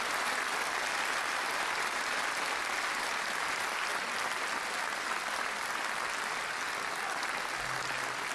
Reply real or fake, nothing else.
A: real